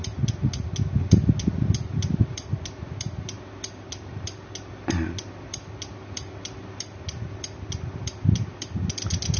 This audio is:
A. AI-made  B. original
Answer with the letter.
B